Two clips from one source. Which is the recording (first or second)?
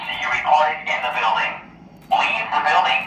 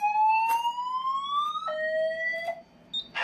second